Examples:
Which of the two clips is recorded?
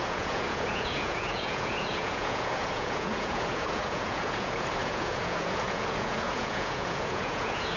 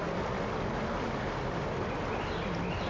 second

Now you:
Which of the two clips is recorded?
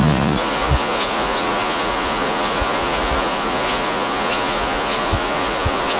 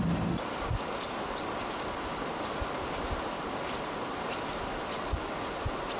second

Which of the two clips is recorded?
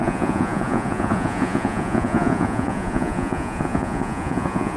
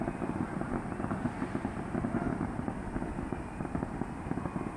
second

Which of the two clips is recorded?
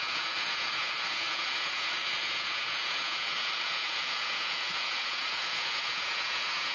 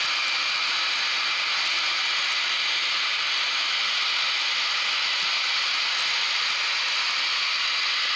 second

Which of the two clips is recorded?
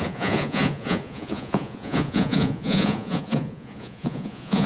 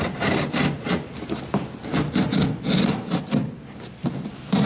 second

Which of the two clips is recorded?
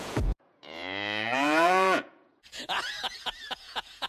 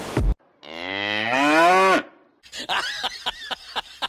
second